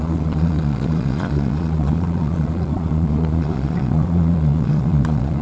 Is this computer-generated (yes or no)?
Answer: yes